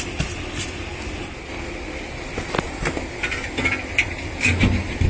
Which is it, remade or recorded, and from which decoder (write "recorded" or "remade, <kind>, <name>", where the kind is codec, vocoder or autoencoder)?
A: recorded